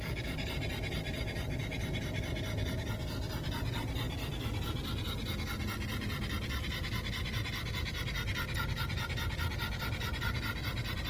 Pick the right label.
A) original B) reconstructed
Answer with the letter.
A